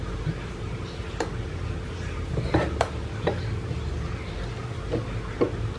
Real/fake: real